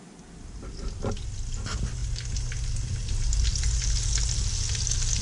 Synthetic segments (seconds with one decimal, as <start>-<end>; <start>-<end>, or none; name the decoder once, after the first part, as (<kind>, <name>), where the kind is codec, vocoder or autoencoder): none